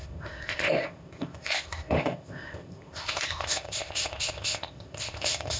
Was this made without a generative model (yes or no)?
no